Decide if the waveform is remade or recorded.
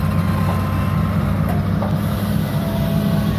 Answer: recorded